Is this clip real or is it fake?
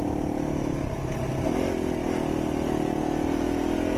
real